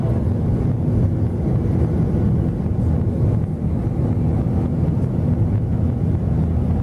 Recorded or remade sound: recorded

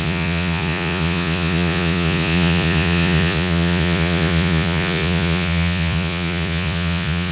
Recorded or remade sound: remade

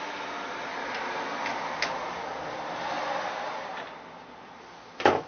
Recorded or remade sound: recorded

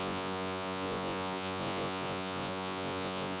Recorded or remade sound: remade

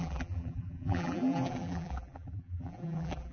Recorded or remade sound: remade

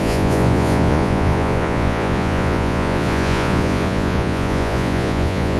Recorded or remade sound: remade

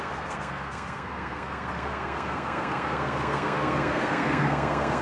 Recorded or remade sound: remade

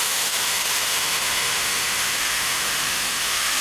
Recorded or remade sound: remade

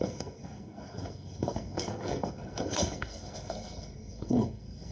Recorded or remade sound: remade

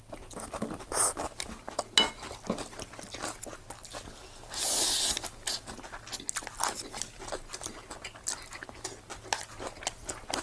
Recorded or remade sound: recorded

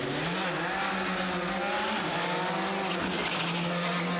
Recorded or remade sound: recorded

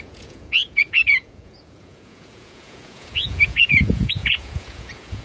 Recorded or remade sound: remade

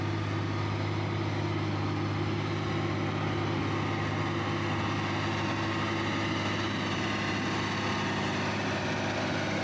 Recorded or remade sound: recorded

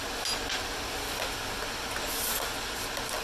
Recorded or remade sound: recorded